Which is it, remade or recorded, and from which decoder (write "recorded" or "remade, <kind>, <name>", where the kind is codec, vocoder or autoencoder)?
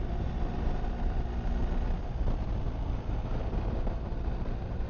recorded